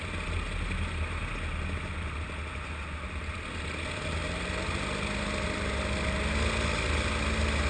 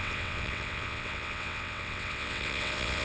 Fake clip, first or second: second